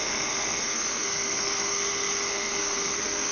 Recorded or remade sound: remade